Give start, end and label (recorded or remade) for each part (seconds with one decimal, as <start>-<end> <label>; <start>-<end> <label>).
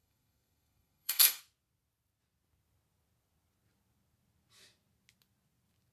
0.0-1.4 remade; 1.4-5.9 recorded